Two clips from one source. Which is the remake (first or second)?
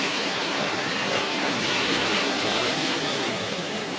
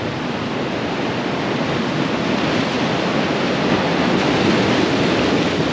first